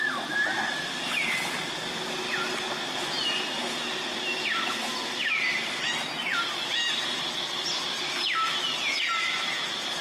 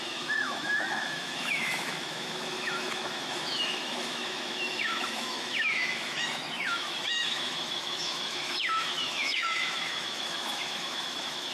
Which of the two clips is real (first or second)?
first